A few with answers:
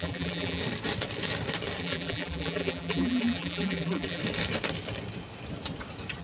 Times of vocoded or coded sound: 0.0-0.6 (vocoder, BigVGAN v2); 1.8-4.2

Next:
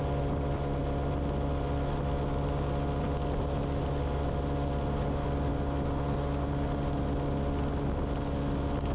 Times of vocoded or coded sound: none

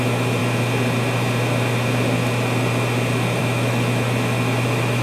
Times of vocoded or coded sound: 0.0-0.4 (autoencoder, DAC-VAE); 3.4-5.0

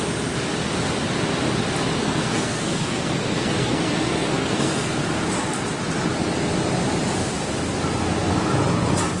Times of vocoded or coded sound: 2.0-5.0 (codec, SNAC)

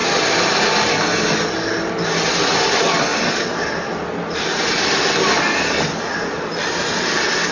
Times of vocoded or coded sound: none